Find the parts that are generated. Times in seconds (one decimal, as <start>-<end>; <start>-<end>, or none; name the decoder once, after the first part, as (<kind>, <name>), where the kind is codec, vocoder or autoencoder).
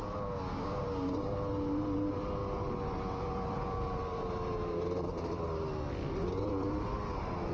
0.5-1.1 (codec, DAC)